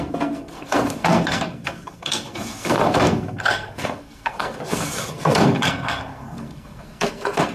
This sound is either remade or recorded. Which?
remade